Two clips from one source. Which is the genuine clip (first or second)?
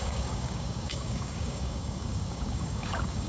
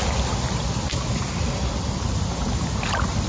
second